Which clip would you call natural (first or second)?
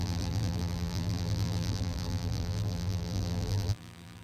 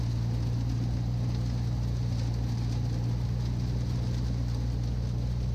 second